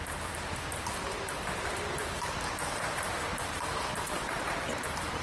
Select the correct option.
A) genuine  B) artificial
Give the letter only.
B